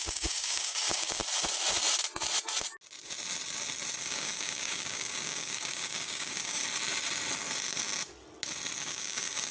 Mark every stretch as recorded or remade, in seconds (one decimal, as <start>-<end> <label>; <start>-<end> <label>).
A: 0.0-1.2 remade; 1.2-4.0 recorded; 4.0-6.6 remade; 6.6-8.8 recorded; 8.8-9.5 remade